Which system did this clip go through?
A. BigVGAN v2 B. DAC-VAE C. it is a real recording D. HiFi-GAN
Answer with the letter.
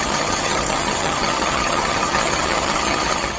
D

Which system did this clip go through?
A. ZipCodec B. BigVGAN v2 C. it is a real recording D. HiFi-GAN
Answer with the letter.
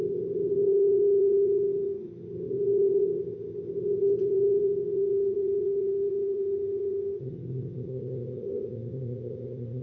D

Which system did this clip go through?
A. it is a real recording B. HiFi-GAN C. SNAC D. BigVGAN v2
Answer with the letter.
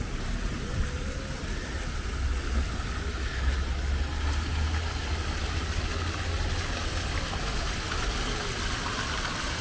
A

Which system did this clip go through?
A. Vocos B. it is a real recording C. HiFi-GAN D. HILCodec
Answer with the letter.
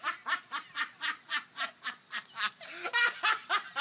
B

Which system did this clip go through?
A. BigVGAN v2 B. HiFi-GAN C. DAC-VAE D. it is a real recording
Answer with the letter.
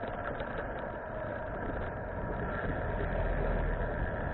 D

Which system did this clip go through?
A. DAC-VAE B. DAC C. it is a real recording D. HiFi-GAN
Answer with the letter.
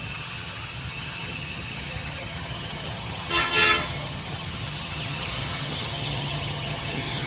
D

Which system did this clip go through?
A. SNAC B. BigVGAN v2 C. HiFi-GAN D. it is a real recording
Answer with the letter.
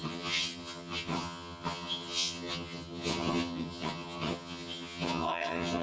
C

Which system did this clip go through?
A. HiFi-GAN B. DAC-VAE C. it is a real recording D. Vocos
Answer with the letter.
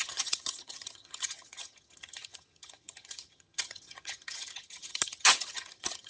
A